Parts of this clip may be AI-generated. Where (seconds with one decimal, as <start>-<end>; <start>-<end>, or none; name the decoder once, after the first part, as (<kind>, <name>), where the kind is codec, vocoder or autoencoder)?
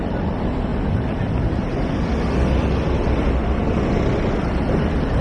0.0-1.7 (vocoder, BigVGAN v2); 4.4-5.2